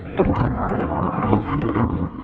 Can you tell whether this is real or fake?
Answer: fake